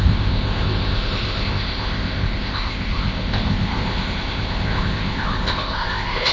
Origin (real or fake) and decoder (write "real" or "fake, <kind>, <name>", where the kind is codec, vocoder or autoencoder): fake, codec, ZipCodec